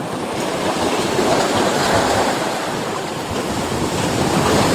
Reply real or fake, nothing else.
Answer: fake